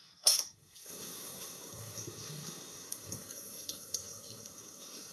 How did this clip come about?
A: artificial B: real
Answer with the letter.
A